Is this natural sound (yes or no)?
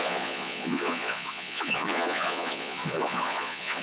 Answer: no